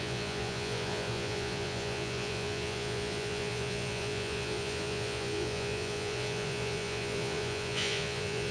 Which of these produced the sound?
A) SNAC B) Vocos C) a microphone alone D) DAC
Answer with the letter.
B